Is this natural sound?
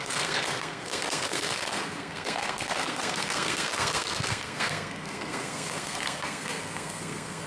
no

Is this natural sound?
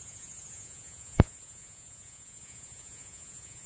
no